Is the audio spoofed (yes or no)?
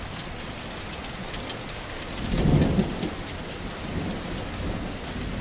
no